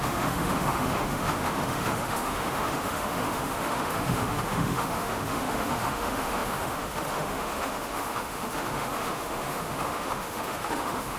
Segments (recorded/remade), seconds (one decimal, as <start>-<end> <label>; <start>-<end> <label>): 0.0-11.2 remade